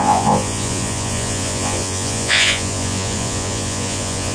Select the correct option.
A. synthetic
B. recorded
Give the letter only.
A